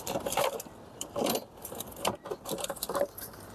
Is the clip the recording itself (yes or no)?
no